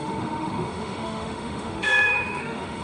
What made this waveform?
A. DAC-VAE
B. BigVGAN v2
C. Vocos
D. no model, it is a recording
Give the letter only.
A